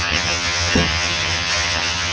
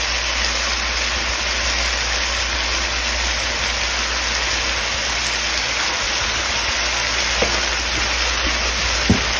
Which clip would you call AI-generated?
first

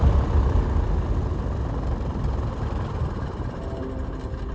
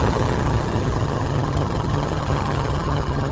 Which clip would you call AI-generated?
second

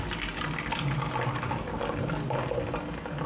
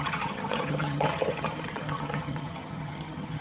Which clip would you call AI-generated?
second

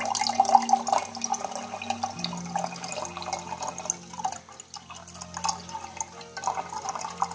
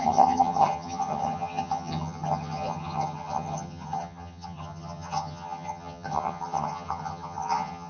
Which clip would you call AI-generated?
second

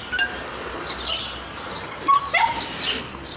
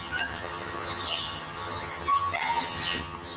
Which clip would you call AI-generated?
second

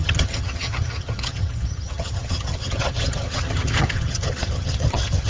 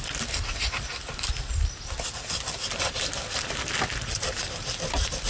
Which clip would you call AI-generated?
first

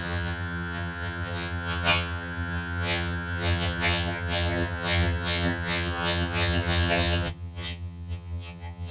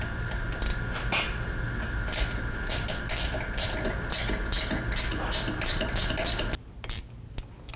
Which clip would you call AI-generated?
first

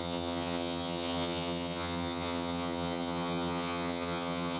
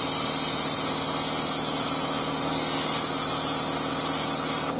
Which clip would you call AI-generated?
first